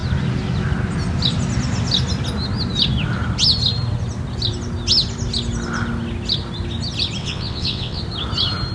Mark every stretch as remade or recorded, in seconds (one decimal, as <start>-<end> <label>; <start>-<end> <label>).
0.0-7.2 recorded; 7.2-8.0 remade; 8.0-8.7 recorded